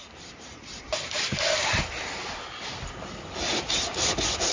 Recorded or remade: recorded